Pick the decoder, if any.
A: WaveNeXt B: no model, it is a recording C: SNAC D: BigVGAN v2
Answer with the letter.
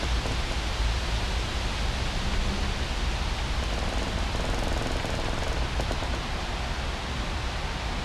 B